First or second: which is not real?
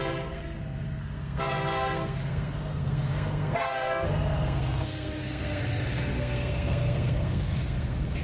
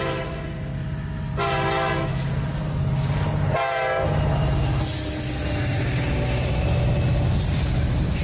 first